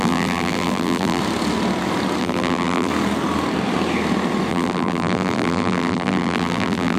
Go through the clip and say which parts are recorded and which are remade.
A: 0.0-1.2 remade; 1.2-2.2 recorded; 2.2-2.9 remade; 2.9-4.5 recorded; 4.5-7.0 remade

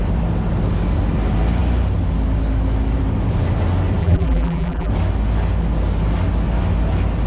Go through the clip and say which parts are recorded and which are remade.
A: 0.0-4.0 recorded; 4.0-4.9 remade; 4.9-7.3 recorded

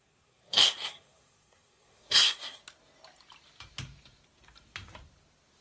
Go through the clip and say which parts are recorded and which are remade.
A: 0.0-2.6 remade; 2.6-5.6 recorded